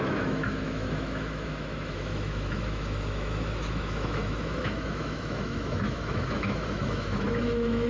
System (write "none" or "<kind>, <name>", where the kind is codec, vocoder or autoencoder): autoencoder, DAC-VAE